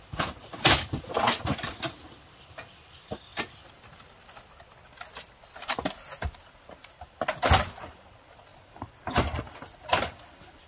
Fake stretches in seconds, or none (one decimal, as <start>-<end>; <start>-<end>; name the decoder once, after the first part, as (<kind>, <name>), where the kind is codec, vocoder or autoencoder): 0.0-3.3 (vocoder, BigVGAN v2); 7.7-10.7